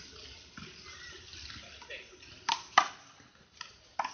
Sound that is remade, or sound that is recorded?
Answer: recorded